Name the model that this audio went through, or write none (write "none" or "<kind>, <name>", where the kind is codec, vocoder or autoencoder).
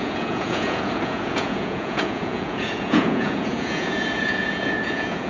vocoder, Vocos